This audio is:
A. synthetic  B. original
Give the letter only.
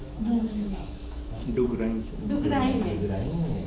A